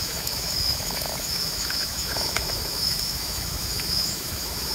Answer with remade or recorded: remade